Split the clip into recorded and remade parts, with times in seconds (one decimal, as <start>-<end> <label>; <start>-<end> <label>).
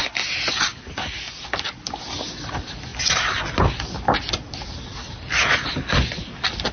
0.0-6.7 recorded